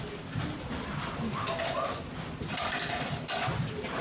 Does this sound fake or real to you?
real